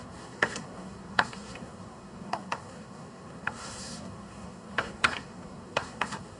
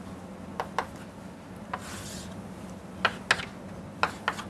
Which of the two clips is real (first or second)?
second